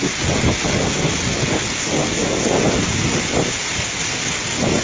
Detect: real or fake real